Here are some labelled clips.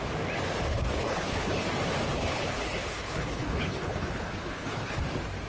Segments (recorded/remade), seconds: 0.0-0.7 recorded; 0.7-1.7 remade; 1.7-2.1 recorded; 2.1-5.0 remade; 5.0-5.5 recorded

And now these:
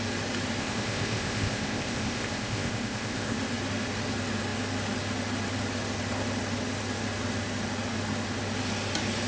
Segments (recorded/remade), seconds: 0.0-0.6 recorded; 0.6-3.4 remade; 3.4-9.3 recorded

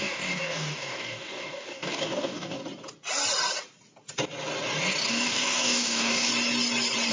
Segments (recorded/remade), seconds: 0.0-2.6 remade; 2.6-5.1 recorded; 5.1-6.3 remade; 6.3-7.1 recorded

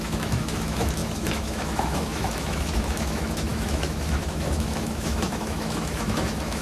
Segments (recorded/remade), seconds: 0.0-6.6 remade

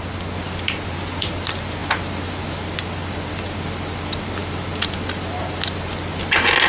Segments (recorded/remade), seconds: 0.0-6.7 recorded

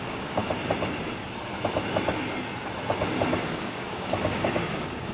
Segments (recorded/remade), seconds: 0.0-0.4 remade; 0.4-3.5 recorded; 3.5-5.1 remade

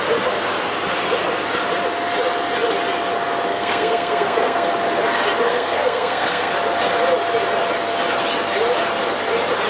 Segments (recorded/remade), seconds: 0.0-3.5 recorded; 3.5-4.7 remade; 4.7-5.5 recorded; 5.5-6.5 remade; 6.5-9.7 recorded

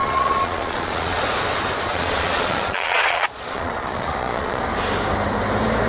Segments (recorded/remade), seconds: 0.0-1.2 remade; 1.2-1.9 recorded; 1.9-4.6 remade; 4.6-5.9 recorded